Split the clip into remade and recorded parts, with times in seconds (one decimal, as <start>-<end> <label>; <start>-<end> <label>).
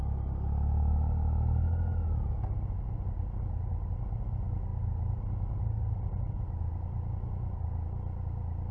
0.0-8.7 recorded